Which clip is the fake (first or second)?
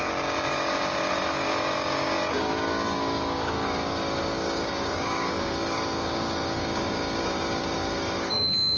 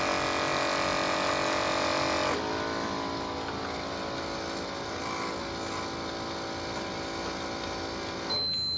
first